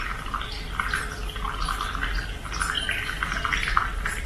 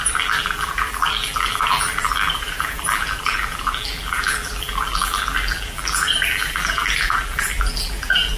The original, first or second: first